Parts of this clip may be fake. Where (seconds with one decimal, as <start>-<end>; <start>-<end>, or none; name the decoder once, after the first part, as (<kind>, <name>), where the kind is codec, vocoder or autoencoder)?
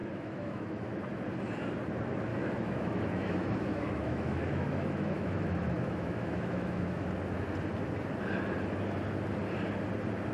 0.0-0.9 (autoencoder, DAC-VAE); 2.3-7.1